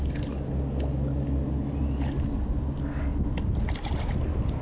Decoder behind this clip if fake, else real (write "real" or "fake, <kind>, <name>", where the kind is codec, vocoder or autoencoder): real